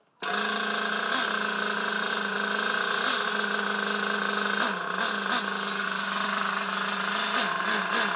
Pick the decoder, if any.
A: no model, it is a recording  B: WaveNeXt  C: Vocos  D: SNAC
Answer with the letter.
A